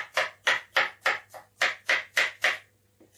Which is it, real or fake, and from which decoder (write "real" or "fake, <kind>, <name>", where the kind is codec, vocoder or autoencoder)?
real